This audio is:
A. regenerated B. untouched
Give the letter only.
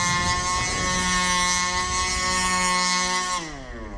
B